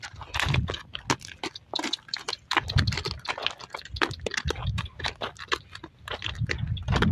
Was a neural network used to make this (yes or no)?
no